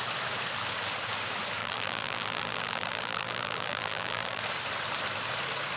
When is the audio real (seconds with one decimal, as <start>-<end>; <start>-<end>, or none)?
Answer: 0.0-1.6; 4.4-5.8